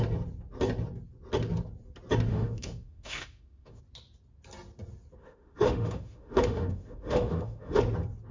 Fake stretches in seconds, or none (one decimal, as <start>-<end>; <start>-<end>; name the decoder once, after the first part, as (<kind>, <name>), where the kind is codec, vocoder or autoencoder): 2.3-3.8 (autoencoder, DAC-VAE); 5.2-7.8